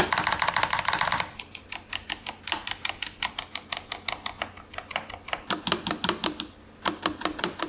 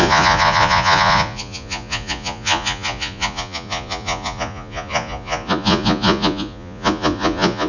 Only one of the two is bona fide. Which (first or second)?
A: first